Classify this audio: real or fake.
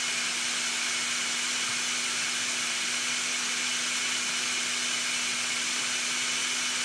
real